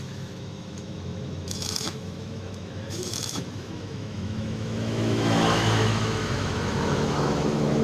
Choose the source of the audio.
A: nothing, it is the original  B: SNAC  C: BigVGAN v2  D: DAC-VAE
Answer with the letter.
D